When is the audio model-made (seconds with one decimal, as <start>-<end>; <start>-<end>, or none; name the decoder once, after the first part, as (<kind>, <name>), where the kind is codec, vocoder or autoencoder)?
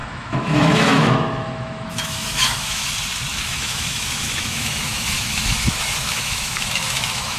0.0-2.9 (autoencoder, DAC-VAE); 3.3-7.4